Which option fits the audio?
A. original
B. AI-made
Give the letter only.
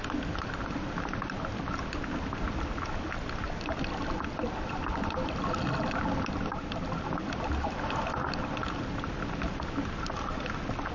A